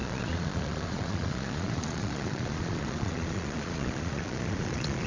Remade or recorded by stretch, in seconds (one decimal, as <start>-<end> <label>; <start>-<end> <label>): 0.0-5.1 remade